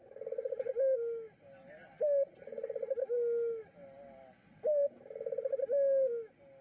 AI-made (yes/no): no